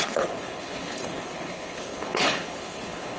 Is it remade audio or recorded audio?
remade